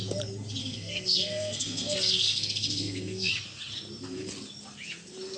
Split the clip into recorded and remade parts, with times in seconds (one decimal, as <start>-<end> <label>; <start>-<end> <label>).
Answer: 0.0-0.6 recorded; 0.6-3.3 remade; 3.3-5.4 recorded